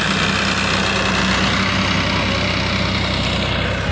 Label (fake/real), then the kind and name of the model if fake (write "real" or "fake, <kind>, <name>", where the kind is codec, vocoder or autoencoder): real